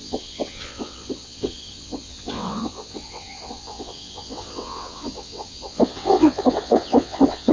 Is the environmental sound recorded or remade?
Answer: remade